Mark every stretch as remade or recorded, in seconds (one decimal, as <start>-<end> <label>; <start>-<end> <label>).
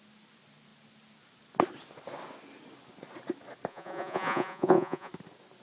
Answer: 0.0-3.7 recorded; 3.7-5.1 remade; 5.1-5.6 recorded